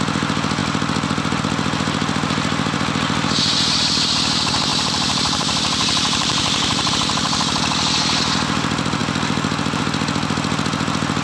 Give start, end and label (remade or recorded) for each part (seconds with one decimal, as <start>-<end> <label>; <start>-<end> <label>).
0.0-4.7 recorded; 4.7-6.9 remade; 6.9-11.2 recorded